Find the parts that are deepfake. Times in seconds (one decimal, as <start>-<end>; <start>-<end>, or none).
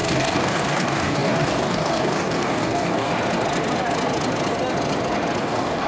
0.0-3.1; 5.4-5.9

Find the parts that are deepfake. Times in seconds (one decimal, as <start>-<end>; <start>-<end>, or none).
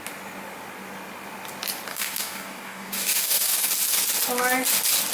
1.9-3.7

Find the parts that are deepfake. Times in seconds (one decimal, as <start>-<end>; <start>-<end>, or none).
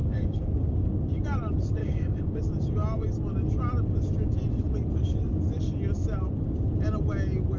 0.0-0.9; 1.8-2.4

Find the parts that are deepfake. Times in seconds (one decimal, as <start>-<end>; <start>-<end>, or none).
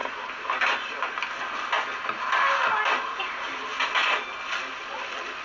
none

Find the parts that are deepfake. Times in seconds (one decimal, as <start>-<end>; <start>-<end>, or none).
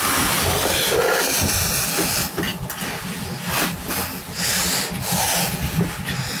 none